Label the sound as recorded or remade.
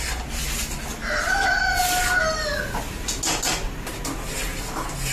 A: recorded